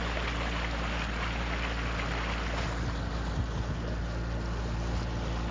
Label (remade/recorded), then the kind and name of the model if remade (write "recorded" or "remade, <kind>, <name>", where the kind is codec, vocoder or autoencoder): recorded